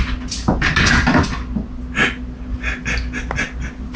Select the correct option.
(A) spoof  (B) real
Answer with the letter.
B